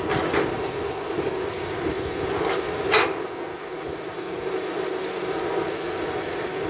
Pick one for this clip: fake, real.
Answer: real